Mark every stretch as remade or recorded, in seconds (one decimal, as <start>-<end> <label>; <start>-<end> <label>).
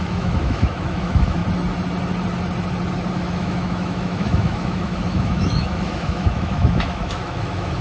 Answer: 0.0-1.4 remade; 1.4-3.1 recorded; 3.1-7.8 remade